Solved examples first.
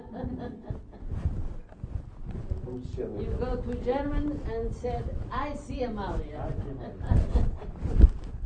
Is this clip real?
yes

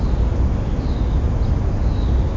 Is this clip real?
yes